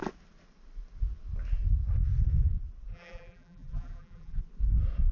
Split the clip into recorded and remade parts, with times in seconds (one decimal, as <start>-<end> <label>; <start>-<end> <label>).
0.0-2.9 recorded; 2.9-4.4 remade; 4.4-5.1 recorded